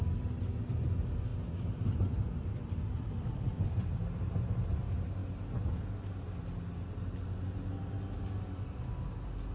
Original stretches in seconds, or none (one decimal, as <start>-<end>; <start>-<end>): 0.0-1.3; 3.4-9.5